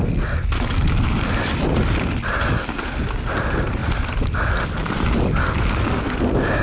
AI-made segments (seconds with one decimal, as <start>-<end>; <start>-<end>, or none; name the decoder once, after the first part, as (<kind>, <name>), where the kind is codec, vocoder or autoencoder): 3.8-5.4 (vocoder, BigVGAN v2)